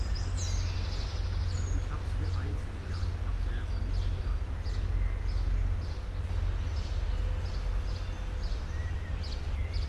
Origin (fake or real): real